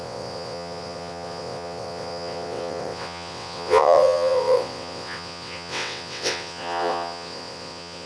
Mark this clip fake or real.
fake